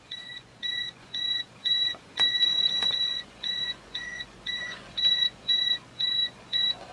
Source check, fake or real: fake